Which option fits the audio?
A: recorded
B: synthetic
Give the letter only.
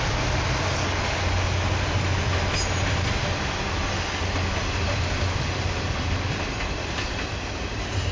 A